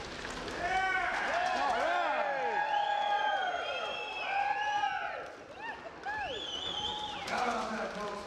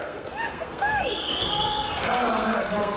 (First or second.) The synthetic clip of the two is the second